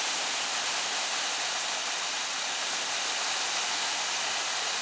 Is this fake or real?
real